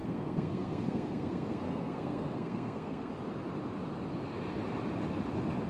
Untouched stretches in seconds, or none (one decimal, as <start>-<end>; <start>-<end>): 3.1-5.7